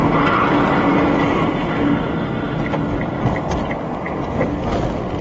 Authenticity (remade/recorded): recorded